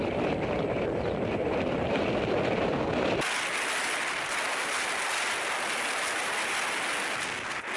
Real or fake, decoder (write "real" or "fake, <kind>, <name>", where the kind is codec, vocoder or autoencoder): real